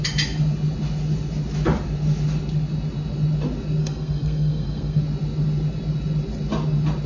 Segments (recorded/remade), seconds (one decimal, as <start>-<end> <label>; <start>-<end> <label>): 0.0-3.8 recorded; 3.8-5.0 remade; 5.0-7.1 recorded